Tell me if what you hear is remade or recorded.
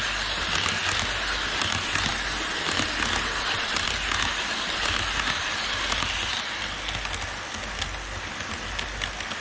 recorded